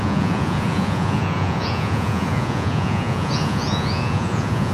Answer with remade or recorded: remade